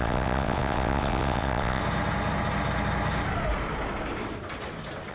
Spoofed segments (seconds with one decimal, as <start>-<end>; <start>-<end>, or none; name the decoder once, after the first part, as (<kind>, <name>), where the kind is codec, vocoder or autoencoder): 0.0-1.8 (vocoder, WaveNeXt)